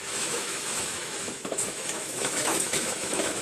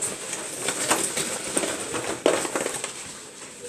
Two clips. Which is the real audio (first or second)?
second